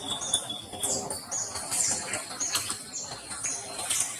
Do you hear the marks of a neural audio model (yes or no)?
no